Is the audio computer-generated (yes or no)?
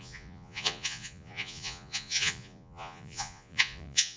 yes